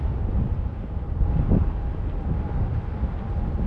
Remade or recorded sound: recorded